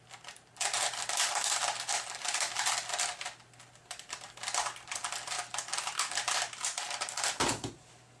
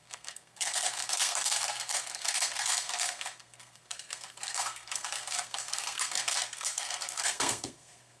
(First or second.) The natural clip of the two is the first